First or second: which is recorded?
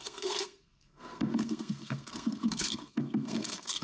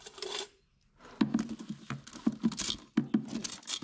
second